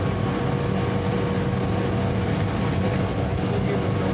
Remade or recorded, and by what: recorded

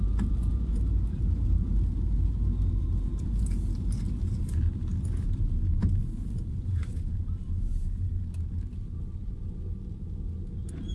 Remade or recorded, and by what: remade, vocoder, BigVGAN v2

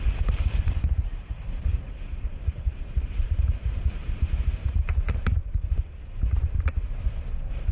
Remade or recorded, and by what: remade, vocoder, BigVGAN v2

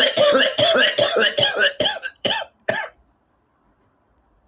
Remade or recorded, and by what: remade, vocoder, BigVGAN v2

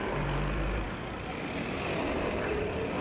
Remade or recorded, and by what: recorded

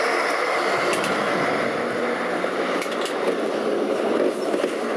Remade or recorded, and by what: recorded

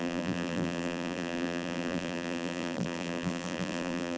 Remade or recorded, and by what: remade, vocoder, BigVGAN v2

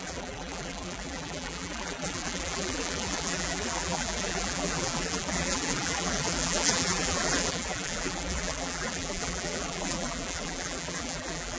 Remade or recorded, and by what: remade, vocoder, BigVGAN v2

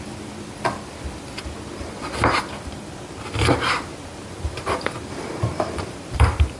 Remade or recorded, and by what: remade, vocoder, BigVGAN v2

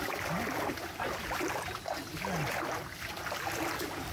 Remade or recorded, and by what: recorded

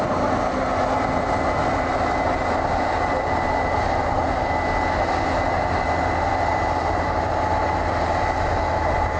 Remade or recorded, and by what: recorded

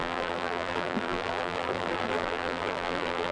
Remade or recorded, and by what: remade, vocoder, BigVGAN v2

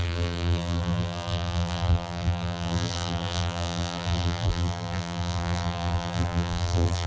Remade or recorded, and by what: remade, vocoder, BigVGAN v2